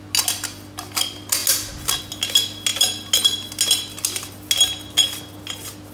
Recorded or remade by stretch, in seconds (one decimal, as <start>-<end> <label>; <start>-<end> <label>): 0.0-5.9 recorded